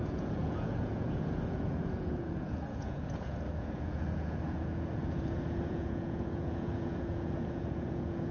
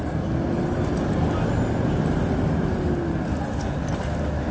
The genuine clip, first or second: second